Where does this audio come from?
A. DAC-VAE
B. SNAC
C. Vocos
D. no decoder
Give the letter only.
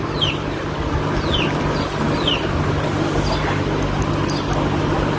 D